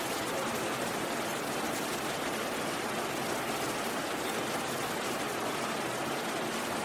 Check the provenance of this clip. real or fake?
real